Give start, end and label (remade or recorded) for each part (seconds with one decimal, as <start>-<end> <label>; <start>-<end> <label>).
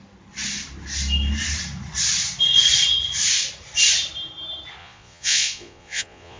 0.0-4.8 recorded; 4.8-6.4 remade